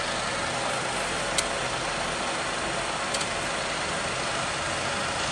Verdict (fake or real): real